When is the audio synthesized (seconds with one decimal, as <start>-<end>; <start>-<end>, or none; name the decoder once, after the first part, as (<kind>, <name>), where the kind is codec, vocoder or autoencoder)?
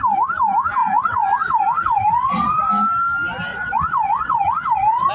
0.8-2.7 (vocoder, Vocos); 3.5-5.1